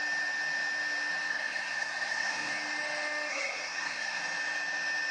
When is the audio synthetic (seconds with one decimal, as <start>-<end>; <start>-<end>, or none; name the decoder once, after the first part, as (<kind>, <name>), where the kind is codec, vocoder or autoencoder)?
1.3-2.5 (codec, SNAC); 3.3-4.2